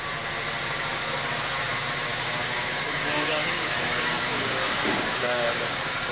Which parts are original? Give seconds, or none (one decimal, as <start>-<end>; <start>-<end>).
0.0-2.1